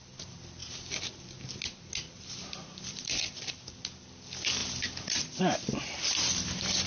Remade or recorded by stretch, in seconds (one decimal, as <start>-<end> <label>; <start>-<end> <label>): 0.0-0.6 remade; 0.6-2.9 recorded; 2.9-6.9 remade